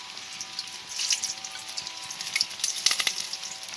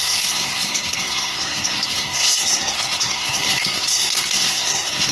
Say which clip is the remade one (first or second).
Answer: second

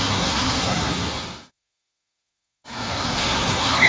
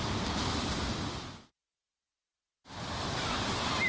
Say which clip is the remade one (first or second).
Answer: first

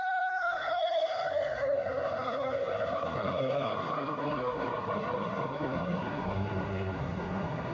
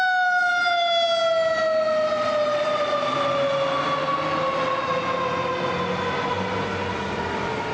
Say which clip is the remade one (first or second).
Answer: first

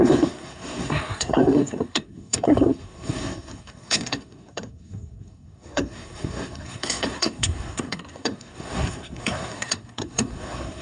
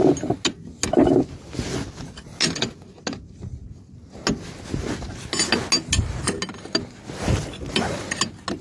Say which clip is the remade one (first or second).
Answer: first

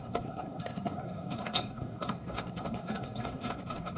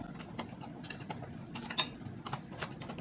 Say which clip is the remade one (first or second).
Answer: first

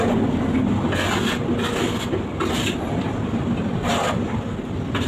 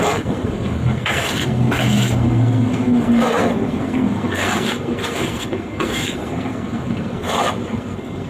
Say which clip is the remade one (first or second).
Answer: second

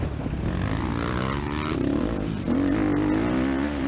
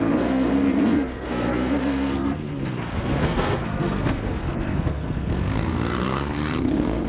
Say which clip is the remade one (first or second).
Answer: second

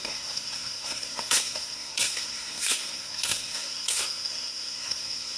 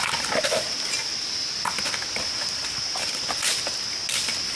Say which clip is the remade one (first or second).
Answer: first